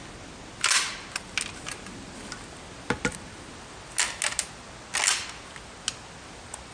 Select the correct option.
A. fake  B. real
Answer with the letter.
B